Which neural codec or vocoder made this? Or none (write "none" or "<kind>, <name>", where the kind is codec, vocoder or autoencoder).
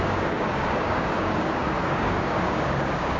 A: codec, DAC